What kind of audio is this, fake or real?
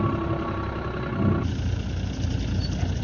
real